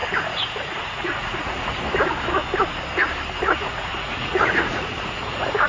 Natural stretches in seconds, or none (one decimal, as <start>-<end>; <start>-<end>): 0.0-0.6; 1.7-3.4